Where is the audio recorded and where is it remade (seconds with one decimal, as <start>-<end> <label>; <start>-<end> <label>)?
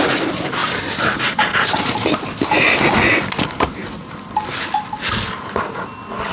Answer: 0.0-6.3 recorded